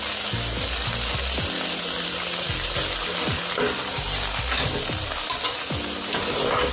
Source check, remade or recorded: recorded